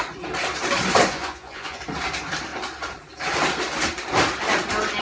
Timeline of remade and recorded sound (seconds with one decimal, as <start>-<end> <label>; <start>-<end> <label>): 0.0-1.1 recorded; 1.1-1.8 remade; 1.8-5.0 recorded